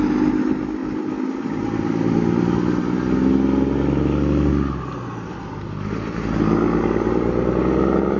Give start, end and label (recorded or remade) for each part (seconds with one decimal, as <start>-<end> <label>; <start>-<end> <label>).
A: 0.0-8.2 recorded